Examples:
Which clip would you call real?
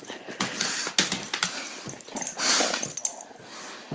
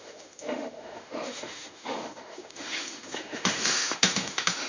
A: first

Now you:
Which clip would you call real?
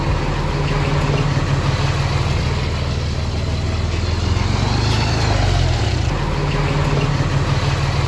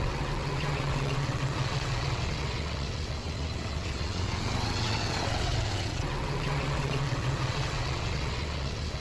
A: first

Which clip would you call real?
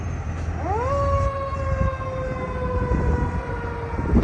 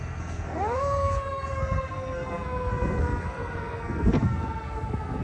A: first